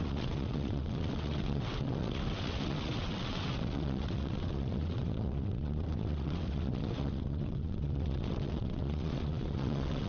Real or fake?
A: fake